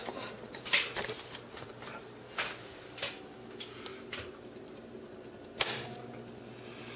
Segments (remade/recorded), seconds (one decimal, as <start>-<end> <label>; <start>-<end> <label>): 0.0-1.7 remade; 1.7-3.9 recorded; 3.9-5.0 remade; 5.0-7.0 recorded

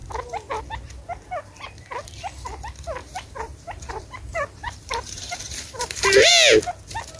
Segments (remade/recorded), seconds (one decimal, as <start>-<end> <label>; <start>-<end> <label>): 0.0-3.0 recorded; 3.0-6.3 remade; 6.3-7.2 recorded